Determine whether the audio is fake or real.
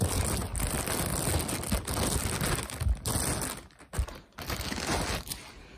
real